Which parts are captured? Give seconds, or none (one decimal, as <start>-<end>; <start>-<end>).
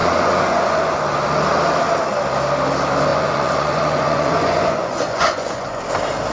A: 1.0-3.1; 5.8-6.3